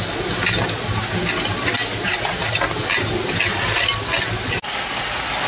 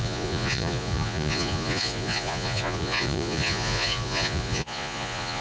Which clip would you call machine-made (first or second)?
second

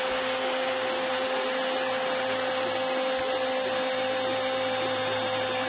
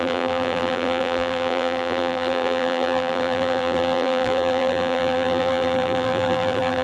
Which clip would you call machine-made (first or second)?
second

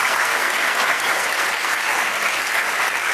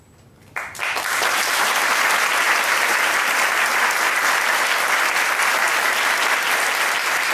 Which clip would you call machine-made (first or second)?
first